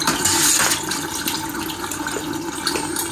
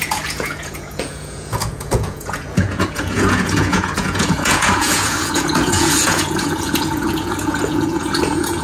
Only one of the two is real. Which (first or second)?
first